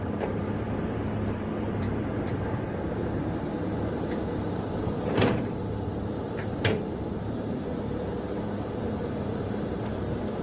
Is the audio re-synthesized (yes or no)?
yes